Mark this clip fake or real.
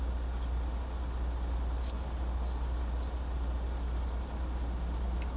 real